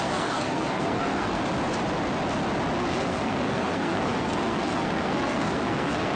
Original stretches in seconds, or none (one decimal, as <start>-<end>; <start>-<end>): 1.4-2.9